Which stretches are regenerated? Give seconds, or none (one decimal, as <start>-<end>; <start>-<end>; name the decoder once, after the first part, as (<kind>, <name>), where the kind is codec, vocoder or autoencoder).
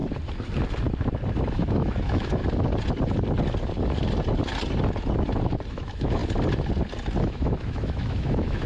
1.5-2.4 (autoencoder, DAC-VAE); 5.7-6.2; 7.2-8.7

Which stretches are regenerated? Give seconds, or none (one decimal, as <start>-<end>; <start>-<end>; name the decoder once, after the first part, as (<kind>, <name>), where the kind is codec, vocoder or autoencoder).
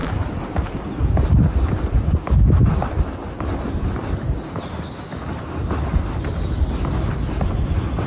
none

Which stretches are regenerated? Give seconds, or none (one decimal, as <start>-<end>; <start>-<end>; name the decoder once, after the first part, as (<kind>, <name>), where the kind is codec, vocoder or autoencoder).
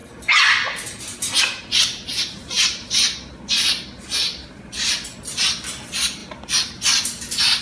none